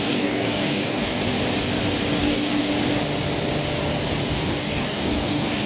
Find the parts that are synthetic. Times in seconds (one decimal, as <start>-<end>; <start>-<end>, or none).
0.0-1.2; 2.2-2.7; 4.3-5.7